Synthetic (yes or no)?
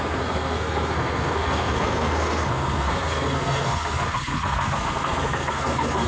yes